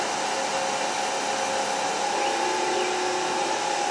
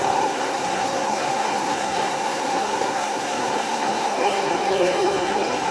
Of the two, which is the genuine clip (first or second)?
first